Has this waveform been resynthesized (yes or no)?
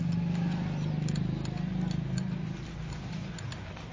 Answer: no